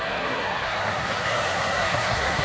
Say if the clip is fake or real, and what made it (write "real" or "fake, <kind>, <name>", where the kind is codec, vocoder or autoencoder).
fake, codec, SNAC